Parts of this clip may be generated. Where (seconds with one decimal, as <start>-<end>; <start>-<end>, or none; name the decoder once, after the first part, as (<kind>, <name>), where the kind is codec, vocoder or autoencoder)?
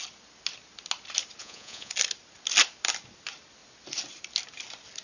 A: 1.4-1.9 (vocoder, Vocos)